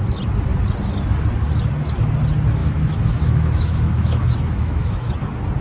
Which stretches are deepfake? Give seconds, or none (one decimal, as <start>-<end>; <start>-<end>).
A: 2.6-5.1